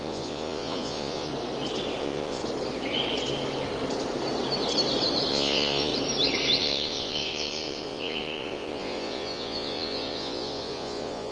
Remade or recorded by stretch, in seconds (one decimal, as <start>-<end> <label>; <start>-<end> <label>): 0.0-1.3 remade; 1.3-2.0 recorded; 2.0-2.4 remade; 2.4-5.3 recorded; 5.3-5.9 remade; 5.9-6.6 recorded; 6.6-11.3 remade